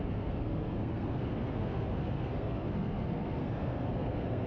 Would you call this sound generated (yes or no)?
yes